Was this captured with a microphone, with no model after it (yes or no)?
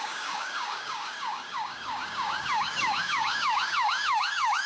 no